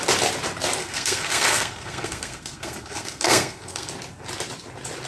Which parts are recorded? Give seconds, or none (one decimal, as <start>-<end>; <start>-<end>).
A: 0.0-0.8; 3.9-5.1